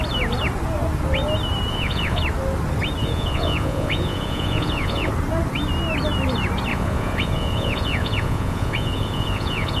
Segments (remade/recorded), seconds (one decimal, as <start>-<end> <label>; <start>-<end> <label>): 0.0-1.7 recorded; 1.7-2.2 remade; 2.2-3.0 recorded; 3.0-5.1 remade; 5.1-6.7 recorded; 6.7-9.8 remade